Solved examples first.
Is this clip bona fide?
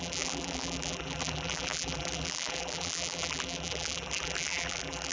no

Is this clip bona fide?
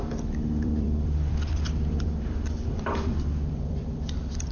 no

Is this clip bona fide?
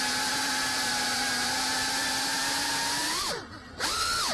no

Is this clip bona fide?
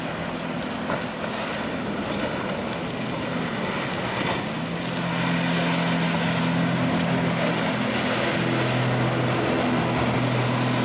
yes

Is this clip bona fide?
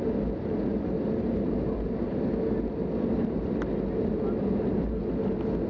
yes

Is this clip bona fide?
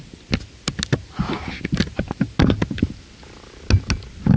yes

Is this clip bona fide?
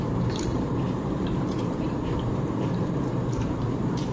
no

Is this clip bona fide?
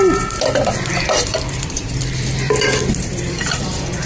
no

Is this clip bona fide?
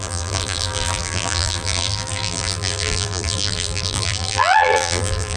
no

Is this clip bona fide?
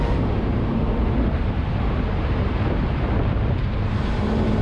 no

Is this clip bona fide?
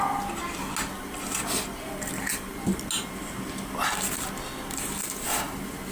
yes